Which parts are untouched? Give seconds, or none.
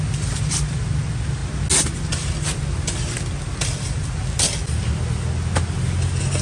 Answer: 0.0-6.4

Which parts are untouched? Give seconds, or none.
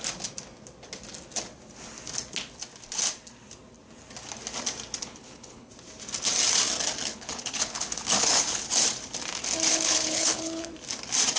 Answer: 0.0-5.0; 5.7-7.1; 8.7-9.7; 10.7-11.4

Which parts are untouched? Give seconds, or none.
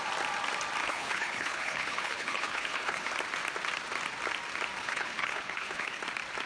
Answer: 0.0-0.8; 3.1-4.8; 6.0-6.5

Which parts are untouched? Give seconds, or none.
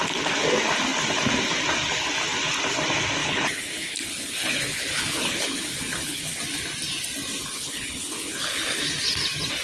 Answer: 0.0-3.2; 6.4-7.4; 8.8-9.6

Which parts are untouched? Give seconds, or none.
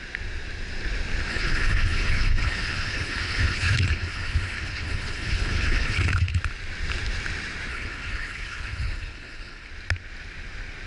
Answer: 0.0-1.3; 6.4-7.7; 9.7-10.9